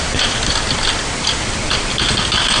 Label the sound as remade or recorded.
recorded